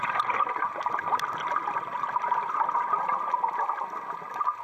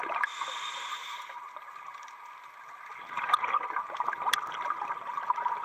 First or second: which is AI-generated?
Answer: first